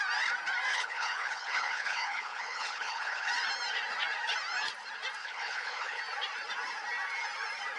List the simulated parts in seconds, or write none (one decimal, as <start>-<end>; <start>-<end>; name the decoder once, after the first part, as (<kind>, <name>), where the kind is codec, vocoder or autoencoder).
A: 0.7-3.3 (codec, HILCodec); 5.2-6.0